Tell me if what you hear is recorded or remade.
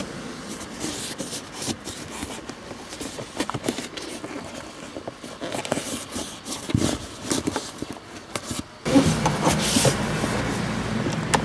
recorded